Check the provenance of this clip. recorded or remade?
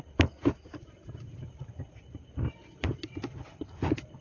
remade